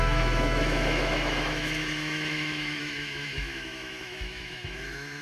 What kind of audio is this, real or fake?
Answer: fake